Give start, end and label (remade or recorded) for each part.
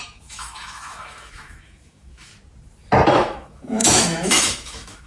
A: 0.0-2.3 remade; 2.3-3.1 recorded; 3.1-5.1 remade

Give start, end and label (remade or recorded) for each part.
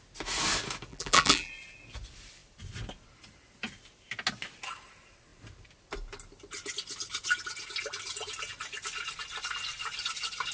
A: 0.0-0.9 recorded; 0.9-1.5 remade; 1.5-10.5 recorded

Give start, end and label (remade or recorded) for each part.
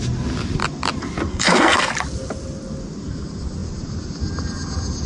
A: 0.0-1.3 recorded; 1.3-1.9 remade; 1.9-5.1 recorded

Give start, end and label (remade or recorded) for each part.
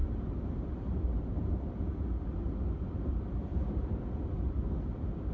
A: 0.0-1.8 remade; 1.8-3.5 recorded; 3.5-4.1 remade; 4.1-5.3 recorded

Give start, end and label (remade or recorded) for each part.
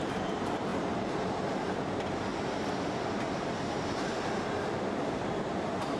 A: 0.0-2.3 remade; 2.3-6.0 recorded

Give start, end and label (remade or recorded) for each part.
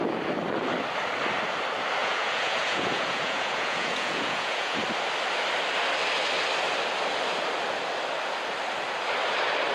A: 0.0-2.0 recorded; 2.0-4.8 remade; 4.8-9.7 recorded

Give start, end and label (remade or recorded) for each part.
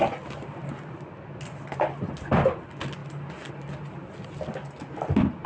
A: 0.0-5.5 recorded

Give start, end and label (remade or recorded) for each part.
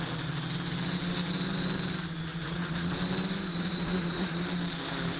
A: 0.0-2.3 recorded; 2.3-2.9 remade; 2.9-3.5 recorded; 3.5-4.4 remade; 4.4-5.2 recorded